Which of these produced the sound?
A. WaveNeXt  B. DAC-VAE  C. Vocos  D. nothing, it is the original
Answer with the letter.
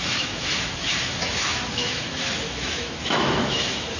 B